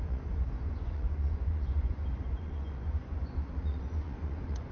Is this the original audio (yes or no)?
no